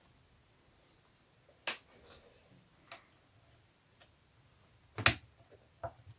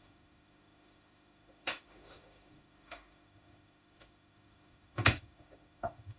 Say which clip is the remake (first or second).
second